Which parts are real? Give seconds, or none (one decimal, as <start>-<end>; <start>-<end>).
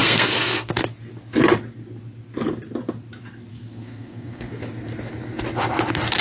0.7-3.5; 4.6-6.2